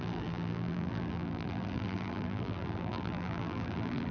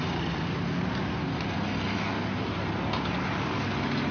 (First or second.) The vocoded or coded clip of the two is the first